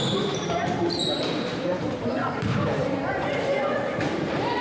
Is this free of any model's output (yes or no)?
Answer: no